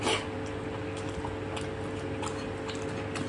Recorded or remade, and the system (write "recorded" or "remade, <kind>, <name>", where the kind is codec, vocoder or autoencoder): recorded